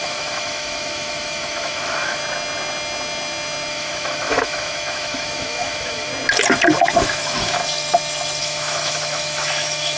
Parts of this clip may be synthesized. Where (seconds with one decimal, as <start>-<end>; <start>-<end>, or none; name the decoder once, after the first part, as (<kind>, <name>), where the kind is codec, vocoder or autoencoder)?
0.0-2.2 (autoencoder, DAC-VAE); 3.7-6.1; 7.0-7.6; 8.4-10.0